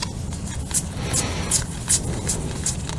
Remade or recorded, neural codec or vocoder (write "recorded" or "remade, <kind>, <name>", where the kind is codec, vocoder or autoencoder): recorded